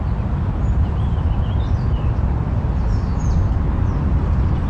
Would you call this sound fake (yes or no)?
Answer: no